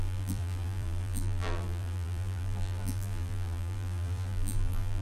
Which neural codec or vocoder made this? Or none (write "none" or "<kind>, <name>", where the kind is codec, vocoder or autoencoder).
vocoder, BigVGAN v2